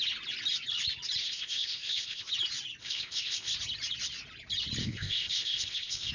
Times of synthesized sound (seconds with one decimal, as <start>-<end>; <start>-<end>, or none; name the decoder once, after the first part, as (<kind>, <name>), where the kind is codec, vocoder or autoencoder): 1.2-2.3 (codec, ZipCodec); 2.8-3.5; 4.8-6.1